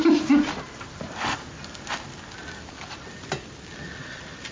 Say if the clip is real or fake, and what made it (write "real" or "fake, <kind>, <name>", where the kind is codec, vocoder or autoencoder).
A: real